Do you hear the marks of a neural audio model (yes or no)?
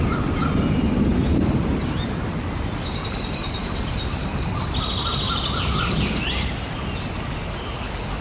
no